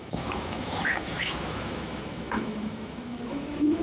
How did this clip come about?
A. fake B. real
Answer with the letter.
A